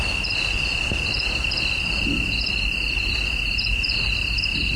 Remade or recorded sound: remade